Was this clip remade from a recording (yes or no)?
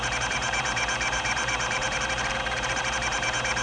yes